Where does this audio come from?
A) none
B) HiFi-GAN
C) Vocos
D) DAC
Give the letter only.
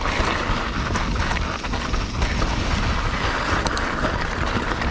A